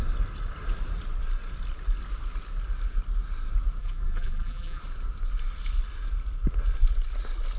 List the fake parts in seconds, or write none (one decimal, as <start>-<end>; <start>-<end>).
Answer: 3.8-4.8